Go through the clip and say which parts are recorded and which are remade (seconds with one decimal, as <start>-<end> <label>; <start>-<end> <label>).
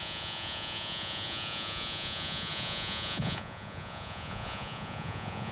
0.0-5.5 remade